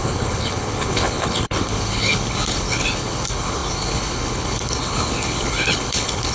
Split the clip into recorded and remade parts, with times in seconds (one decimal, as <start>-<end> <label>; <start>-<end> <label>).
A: 0.0-6.3 remade